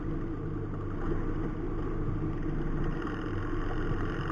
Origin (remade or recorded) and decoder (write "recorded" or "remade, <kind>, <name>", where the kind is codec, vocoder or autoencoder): recorded